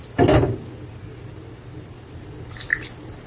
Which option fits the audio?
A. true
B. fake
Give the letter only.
A